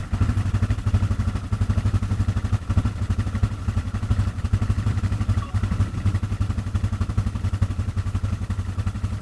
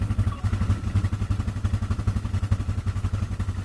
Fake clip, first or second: first